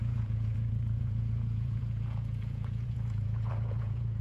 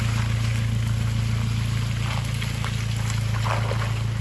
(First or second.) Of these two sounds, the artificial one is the first